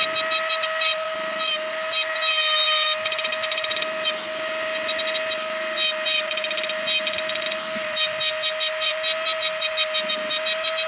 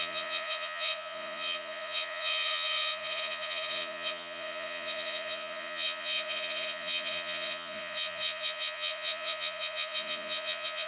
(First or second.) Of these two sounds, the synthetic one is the second